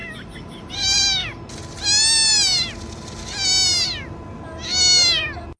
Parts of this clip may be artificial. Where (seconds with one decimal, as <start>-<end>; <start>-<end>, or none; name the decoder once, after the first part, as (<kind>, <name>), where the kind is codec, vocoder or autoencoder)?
0.0-0.7 (vocoder, BigVGAN v2)